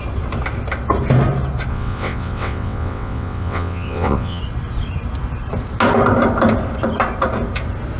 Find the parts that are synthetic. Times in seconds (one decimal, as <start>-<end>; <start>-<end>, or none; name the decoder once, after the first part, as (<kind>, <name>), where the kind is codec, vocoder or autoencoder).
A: 1.7-4.4 (vocoder, WaveNeXt)